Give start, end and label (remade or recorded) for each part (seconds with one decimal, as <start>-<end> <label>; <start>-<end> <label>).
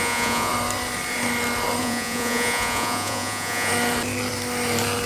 0.0-0.5 remade; 0.5-1.8 recorded; 1.8-3.7 remade; 3.7-5.1 recorded